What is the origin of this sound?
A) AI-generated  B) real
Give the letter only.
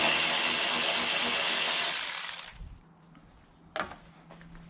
B